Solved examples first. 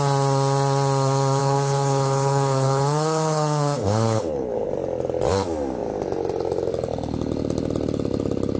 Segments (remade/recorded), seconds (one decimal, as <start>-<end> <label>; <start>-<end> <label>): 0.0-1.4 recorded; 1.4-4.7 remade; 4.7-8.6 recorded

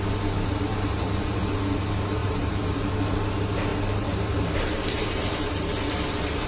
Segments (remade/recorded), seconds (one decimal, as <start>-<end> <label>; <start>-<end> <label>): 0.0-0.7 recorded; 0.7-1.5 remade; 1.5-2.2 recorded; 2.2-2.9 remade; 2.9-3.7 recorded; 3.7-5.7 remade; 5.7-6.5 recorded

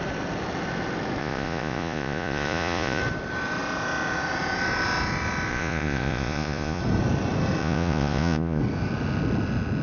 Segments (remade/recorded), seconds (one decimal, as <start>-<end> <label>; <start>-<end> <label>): 0.0-1.2 recorded; 1.2-3.0 remade; 3.0-5.5 recorded; 5.5-6.8 remade; 6.8-7.6 recorded; 7.6-8.6 remade; 8.6-9.8 recorded

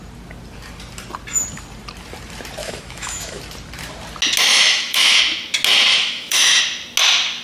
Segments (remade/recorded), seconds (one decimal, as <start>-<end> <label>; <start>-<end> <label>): 0.0-2.6 recorded; 2.6-3.4 remade; 3.4-4.5 recorded; 4.5-5.2 remade; 5.2-5.9 recorded; 5.9-6.6 remade; 6.6-7.4 recorded

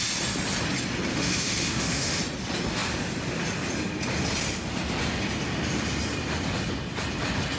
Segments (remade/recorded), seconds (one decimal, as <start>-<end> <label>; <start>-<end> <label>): 0.0-1.1 recorded; 1.1-2.2 remade; 2.2-7.6 recorded